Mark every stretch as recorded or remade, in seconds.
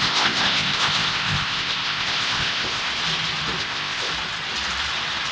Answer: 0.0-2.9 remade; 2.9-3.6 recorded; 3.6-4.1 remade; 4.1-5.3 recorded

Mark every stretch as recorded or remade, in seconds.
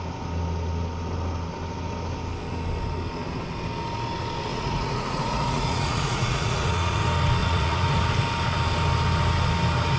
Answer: 0.0-4.5 recorded; 4.5-7.0 remade; 7.0-7.4 recorded; 7.4-8.0 remade; 8.0-10.0 recorded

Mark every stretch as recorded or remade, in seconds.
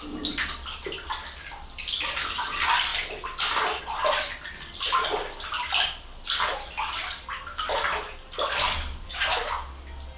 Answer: 0.0-10.2 recorded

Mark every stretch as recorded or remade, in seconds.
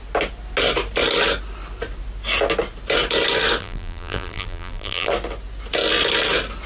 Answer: 0.0-3.6 recorded; 3.6-5.1 remade; 5.1-6.7 recorded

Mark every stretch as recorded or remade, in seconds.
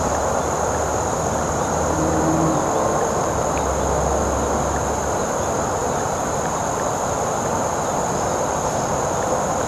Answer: 0.0-9.7 recorded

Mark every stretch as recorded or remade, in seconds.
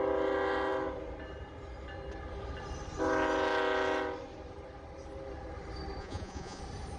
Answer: 0.0-6.0 recorded; 6.0-6.6 remade; 6.6-7.0 recorded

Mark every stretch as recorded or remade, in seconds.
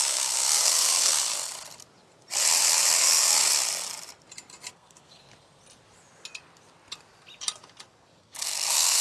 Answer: 0.0-1.3 remade; 1.3-2.9 recorded; 2.9-3.5 remade; 3.5-4.7 recorded; 4.7-5.2 remade; 5.2-8.2 recorded; 8.2-9.0 remade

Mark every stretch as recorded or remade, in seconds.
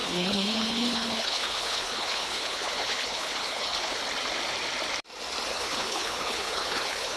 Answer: 0.0-4.0 remade; 4.0-5.5 recorded; 5.5-7.2 remade